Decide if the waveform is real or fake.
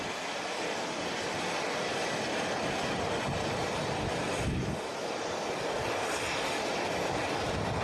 fake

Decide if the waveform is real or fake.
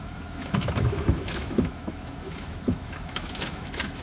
fake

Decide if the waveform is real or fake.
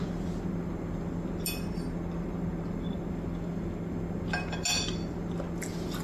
real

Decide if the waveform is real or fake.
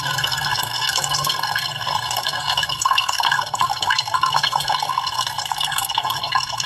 fake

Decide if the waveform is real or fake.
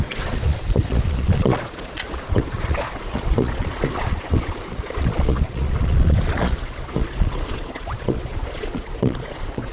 fake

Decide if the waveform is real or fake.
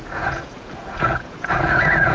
fake